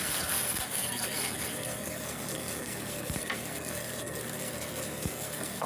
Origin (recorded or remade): remade